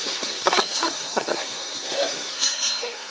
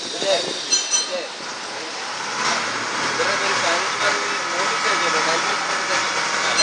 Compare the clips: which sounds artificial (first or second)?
first